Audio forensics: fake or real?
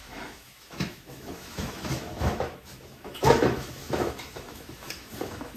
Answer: fake